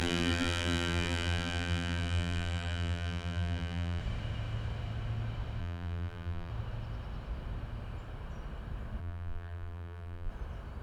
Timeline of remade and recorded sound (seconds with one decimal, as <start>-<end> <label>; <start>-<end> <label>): 0.0-4.0 remade; 4.0-5.6 recorded; 5.6-6.5 remade; 6.5-9.0 recorded; 9.0-10.3 remade; 10.3-10.8 recorded

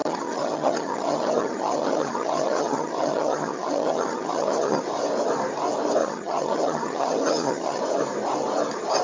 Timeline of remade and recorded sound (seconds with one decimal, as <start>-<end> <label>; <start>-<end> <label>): 0.0-4.8 remade; 4.8-6.0 recorded; 6.0-7.8 remade; 7.8-9.0 recorded

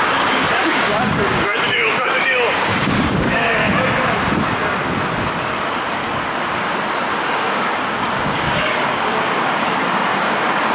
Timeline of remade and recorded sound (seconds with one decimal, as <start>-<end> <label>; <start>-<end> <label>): 0.0-3.6 remade; 3.6-7.1 recorded; 7.1-10.7 remade

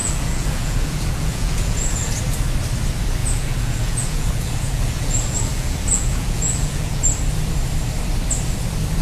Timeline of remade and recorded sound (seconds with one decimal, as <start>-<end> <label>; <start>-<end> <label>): 0.0-2.2 remade; 2.2-3.2 recorded; 3.2-7.0 remade; 7.0-9.0 recorded

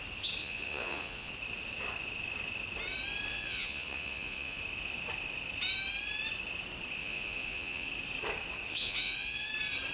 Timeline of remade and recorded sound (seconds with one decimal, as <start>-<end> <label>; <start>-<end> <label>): 0.0-0.4 recorded; 0.4-1.3 remade; 1.3-3.3 recorded; 3.3-4.6 remade; 4.6-7.0 recorded; 7.0-7.9 remade; 7.9-8.7 recorded; 8.7-9.5 remade; 9.5-9.9 recorded

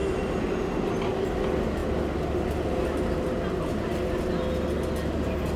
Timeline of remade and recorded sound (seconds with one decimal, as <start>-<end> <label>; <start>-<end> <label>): 0.0-5.6 recorded

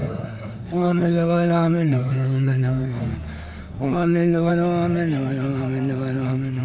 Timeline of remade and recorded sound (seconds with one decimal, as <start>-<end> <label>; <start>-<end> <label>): 0.0-3.0 remade; 3.0-3.6 recorded; 3.6-4.5 remade; 4.5-6.6 recorded